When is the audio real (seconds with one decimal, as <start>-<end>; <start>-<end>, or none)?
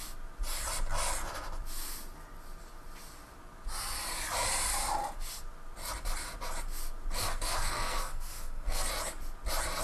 0.0-7.2; 8.9-9.8